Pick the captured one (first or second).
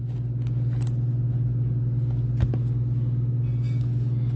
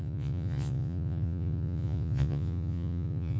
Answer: first